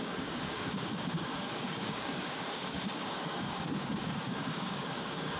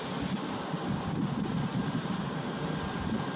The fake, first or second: first